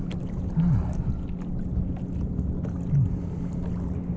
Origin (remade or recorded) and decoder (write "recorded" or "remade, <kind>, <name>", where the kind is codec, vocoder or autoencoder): recorded